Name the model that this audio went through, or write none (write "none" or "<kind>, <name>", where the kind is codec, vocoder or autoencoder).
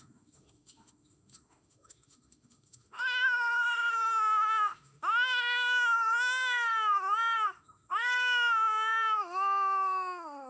autoencoder, DAC-VAE